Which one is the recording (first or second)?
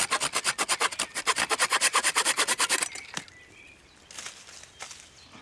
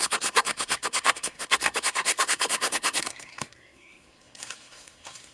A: first